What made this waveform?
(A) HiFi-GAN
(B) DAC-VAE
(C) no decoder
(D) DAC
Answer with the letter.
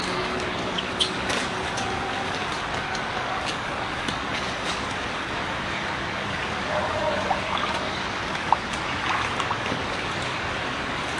D